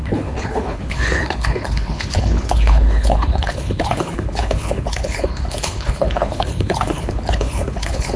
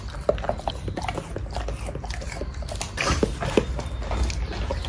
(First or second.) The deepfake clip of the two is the first